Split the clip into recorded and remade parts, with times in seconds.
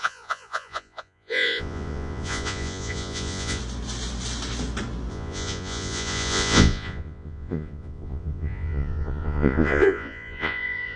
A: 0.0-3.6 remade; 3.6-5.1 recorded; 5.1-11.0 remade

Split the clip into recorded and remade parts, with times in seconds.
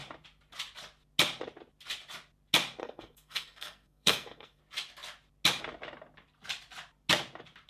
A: 0.0-2.8 recorded; 2.8-4.6 remade; 4.6-7.7 recorded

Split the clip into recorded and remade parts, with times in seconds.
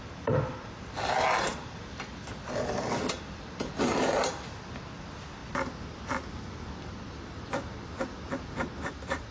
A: 0.0-9.3 recorded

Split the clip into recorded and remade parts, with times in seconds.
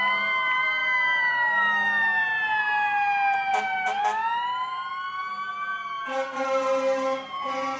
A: 0.0-7.8 recorded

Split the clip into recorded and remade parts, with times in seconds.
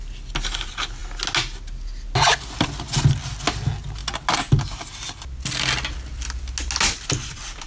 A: 0.0-7.7 recorded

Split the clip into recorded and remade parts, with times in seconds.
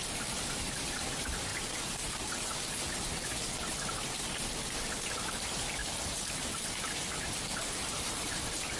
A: 0.0-1.5 remade; 1.5-4.9 recorded; 4.9-8.8 remade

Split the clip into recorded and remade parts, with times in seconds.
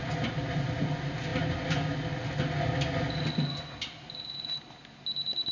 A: 0.0-5.5 recorded